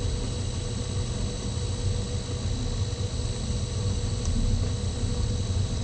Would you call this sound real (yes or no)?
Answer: yes